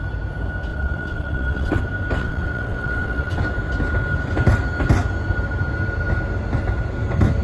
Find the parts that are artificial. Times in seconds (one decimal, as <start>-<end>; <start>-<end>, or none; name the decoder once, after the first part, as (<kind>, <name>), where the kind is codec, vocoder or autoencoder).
0.7-1.8 (vocoder, WaveNeXt); 2.2-3.4